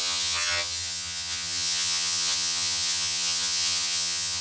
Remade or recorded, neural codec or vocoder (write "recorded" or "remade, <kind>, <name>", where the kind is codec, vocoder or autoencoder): remade, vocoder, HiFi-GAN